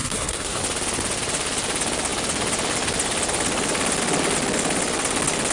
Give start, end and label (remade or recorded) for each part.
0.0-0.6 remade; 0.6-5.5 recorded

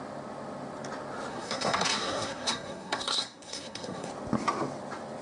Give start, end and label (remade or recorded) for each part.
0.0-1.3 recorded; 1.3-4.1 remade; 4.1-5.2 recorded

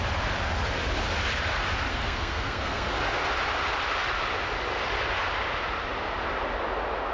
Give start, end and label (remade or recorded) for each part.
0.0-1.9 recorded; 1.9-2.9 remade; 2.9-7.1 recorded

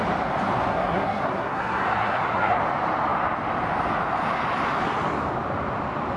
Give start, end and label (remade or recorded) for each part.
0.0-0.7 recorded; 0.7-2.6 remade; 2.6-6.2 recorded

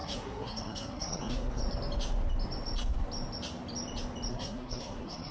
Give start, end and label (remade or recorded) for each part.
0.0-1.6 remade; 1.6-4.3 recorded; 4.3-5.3 remade